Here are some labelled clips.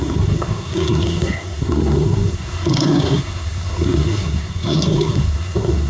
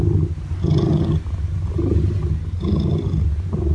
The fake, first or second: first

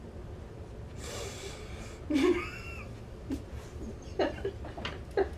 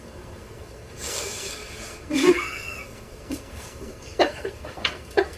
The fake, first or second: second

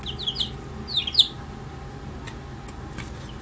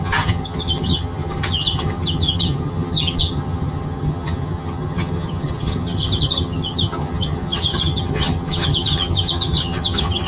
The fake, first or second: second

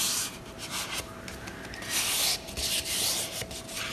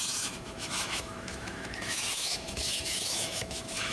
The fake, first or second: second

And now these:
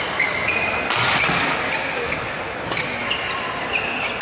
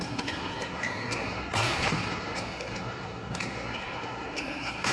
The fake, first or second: second